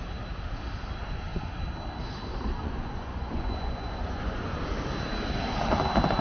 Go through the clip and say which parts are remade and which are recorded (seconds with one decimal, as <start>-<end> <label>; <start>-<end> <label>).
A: 0.0-2.6 recorded; 2.6-4.6 remade; 4.6-6.2 recorded